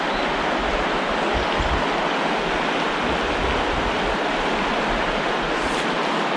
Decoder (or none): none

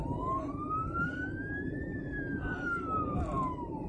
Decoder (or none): vocoder, BigVGAN v2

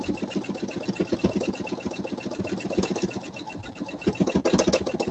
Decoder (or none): none